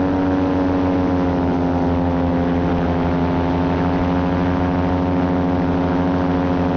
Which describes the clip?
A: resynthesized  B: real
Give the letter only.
B